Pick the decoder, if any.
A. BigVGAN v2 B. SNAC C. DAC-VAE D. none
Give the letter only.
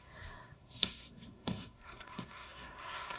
B